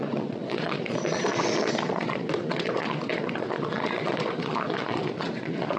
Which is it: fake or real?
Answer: fake